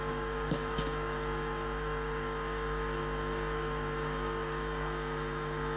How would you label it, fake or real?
fake